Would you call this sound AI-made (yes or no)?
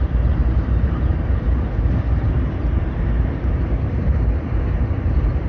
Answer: yes